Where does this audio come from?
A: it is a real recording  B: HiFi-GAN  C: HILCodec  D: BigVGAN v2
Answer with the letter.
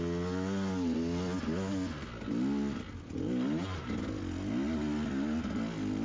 A